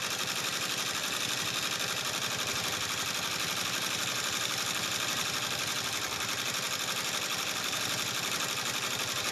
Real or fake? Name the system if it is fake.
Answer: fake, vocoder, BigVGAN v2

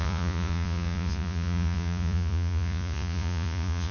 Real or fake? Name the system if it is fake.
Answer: fake, vocoder, Vocos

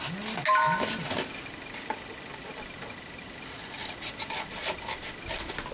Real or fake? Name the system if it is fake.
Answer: real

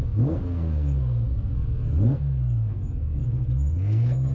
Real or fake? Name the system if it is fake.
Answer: fake, codec, SNAC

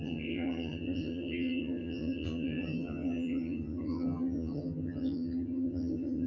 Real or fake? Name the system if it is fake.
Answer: fake, vocoder, HiFi-GAN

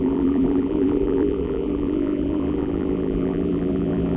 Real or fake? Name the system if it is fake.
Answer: fake, vocoder, BigVGAN v2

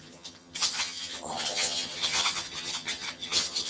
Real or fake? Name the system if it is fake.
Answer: fake, vocoder, HiFi-GAN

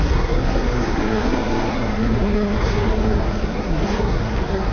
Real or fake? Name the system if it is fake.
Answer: fake, codec, SNAC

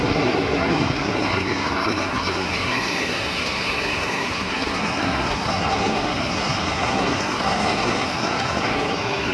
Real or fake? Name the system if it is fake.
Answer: fake, codec, SNAC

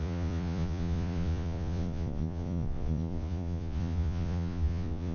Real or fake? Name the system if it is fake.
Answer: fake, vocoder, Vocos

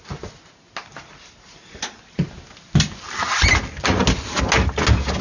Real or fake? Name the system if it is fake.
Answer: real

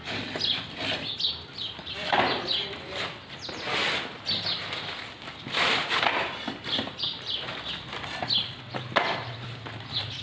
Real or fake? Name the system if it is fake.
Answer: real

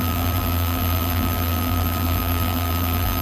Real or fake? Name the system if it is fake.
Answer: fake, vocoder, BigVGAN v2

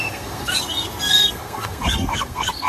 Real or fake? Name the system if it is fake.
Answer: fake, codec, SNAC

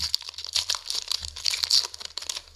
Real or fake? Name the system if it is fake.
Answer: real